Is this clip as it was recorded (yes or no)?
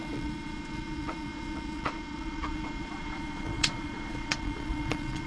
no